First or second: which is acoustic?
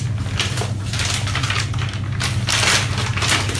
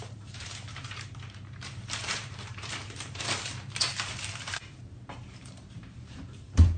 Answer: first